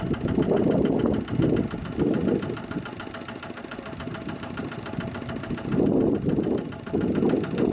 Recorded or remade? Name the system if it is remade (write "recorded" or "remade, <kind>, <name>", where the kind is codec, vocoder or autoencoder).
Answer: recorded